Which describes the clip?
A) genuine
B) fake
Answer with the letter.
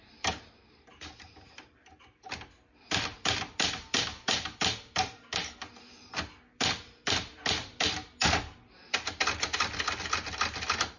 A